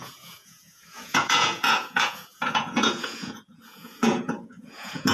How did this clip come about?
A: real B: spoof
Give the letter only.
B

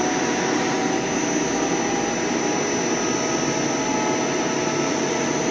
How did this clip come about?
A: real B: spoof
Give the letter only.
A